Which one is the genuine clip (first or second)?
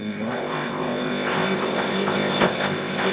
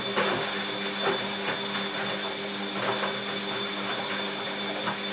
second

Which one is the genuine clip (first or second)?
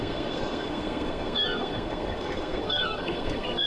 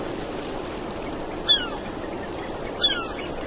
second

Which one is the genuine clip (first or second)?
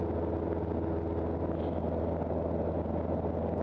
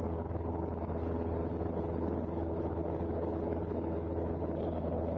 first